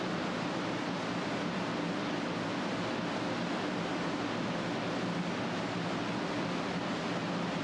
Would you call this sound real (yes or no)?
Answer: yes